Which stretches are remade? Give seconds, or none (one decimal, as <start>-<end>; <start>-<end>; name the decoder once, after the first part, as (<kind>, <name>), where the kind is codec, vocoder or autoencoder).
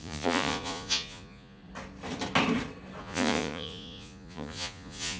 0.0-1.6 (vocoder, Vocos); 3.0-5.2